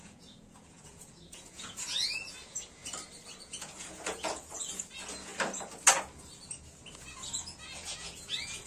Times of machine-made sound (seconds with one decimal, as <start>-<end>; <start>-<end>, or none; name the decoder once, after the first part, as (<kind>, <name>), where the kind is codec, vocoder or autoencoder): 0.0-2.8 (vocoder, Vocos); 3.4-5.3; 6.9-8.7